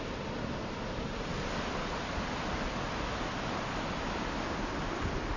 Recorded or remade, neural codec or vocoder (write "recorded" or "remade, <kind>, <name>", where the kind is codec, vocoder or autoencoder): recorded